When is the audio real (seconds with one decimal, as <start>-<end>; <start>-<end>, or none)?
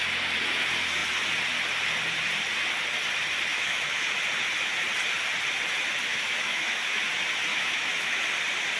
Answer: 0.0-3.5; 4.1-6.1; 7.0-7.5; 8.2-8.8